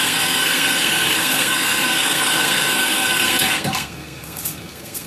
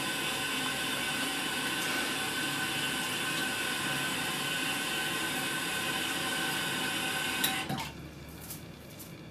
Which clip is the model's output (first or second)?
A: first